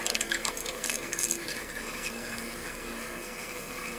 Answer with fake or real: fake